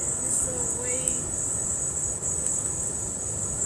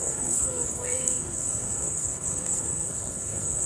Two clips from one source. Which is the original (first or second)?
first